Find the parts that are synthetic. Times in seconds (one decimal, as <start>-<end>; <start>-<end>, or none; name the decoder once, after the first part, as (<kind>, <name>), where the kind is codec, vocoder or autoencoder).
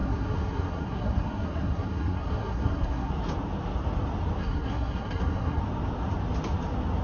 0.0-3.1 (codec, SNAC); 4.4-5.6